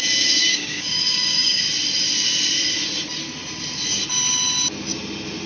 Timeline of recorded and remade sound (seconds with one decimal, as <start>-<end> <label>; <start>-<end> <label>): 0.0-0.4 recorded; 0.4-1.6 remade; 1.6-5.5 recorded